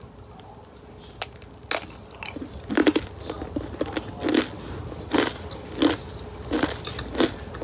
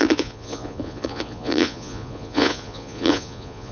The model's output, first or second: second